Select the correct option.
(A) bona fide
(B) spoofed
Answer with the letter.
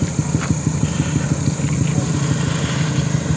A